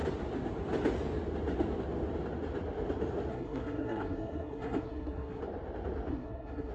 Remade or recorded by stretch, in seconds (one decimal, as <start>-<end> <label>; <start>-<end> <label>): 0.0-3.3 recorded; 3.3-5.4 remade; 5.4-6.1 recorded; 6.1-6.7 remade